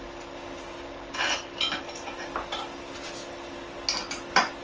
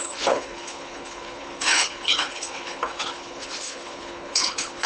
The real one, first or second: first